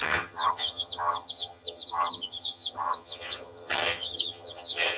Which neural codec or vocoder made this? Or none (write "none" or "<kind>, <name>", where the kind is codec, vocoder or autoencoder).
vocoder, HiFi-GAN